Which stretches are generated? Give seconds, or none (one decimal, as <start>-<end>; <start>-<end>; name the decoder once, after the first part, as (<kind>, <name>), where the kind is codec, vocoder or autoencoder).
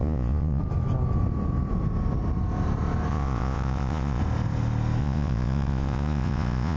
0.0-0.6 (vocoder, Vocos); 3.1-4.2; 5.0-6.8